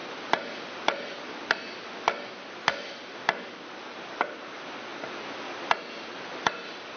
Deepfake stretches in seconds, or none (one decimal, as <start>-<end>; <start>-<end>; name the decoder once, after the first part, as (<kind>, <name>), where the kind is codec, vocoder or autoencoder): none